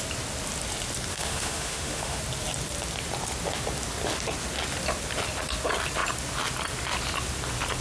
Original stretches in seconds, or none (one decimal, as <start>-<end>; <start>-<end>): 0.0-1.1; 2.2-7.8